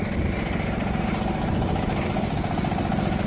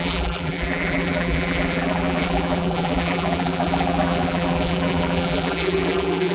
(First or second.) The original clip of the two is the first